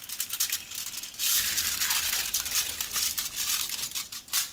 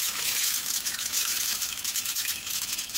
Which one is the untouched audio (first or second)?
first